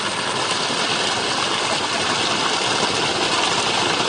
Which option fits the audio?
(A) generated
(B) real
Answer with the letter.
B